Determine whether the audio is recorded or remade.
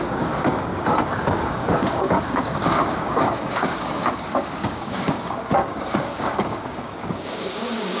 remade